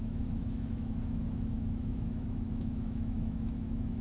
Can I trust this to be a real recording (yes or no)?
no